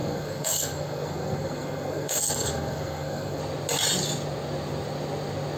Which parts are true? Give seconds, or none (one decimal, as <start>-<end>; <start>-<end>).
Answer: 3.4-5.6